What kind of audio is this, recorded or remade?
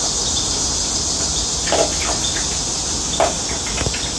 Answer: recorded